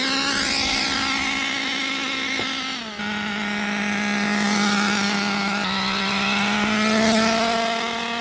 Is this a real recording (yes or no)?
yes